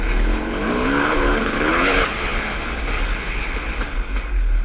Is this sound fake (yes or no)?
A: yes